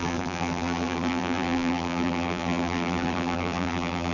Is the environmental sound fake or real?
fake